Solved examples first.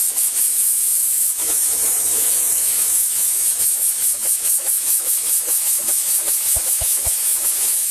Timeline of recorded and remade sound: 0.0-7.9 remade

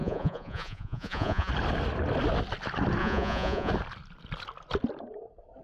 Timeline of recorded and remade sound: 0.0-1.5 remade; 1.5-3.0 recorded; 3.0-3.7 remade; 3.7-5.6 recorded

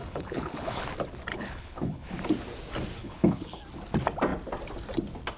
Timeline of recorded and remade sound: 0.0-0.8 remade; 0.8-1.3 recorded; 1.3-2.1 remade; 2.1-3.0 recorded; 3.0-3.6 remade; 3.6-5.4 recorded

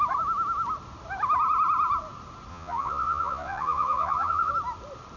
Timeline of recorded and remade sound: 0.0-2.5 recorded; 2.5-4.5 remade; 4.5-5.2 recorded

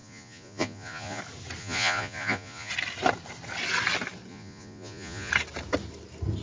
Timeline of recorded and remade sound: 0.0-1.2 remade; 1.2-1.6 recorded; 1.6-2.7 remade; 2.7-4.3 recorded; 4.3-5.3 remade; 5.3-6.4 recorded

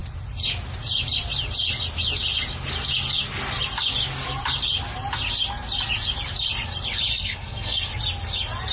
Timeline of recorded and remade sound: 0.0-7.1 recorded; 7.1-7.9 remade; 7.9-8.7 recorded